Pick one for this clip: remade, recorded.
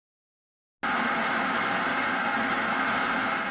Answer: recorded